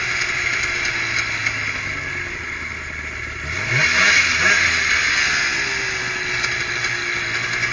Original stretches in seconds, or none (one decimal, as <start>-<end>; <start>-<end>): 0.0-7.7